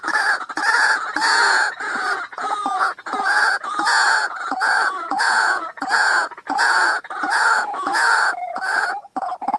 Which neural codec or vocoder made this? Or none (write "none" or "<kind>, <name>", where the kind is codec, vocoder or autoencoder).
vocoder, Vocos